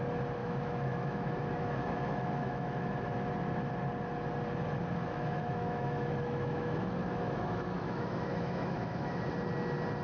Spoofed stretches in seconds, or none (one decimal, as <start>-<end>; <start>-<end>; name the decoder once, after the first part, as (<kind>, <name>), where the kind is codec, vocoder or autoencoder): 0.4-3.1 (autoencoder, DAC-VAE); 5.0-9.3